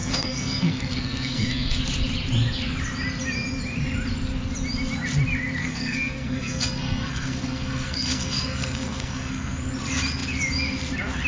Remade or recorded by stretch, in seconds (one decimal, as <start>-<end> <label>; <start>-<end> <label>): 0.0-1.8 remade; 1.8-5.6 recorded; 5.6-9.7 remade; 9.7-11.3 recorded